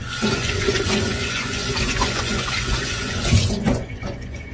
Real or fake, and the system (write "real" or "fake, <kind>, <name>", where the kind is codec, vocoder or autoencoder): fake, vocoder, Vocos